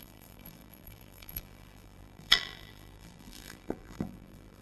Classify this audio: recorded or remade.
remade